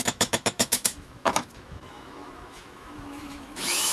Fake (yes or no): yes